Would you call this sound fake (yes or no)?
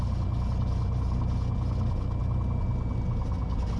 no